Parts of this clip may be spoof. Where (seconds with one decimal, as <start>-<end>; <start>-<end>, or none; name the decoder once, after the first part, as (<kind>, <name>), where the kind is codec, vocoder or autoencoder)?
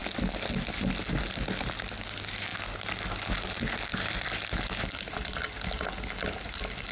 none